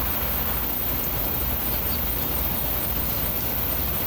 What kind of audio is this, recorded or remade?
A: recorded